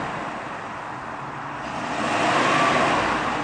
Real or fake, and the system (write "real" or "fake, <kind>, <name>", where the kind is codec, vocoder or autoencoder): real